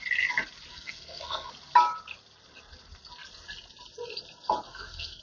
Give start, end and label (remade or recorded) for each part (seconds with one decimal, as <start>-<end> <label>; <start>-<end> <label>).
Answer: 0.0-0.7 recorded; 0.7-1.5 remade; 1.5-4.7 recorded; 4.7-5.2 remade